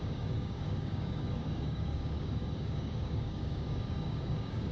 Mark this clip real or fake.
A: fake